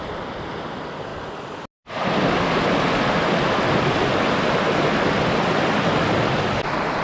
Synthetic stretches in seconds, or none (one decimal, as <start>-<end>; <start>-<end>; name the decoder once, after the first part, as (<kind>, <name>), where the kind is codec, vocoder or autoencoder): none